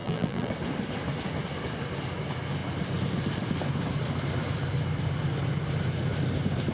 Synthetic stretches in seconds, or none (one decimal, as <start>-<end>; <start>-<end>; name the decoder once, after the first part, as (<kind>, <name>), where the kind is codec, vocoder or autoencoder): 0.0-0.5 (vocoder, BigVGAN v2)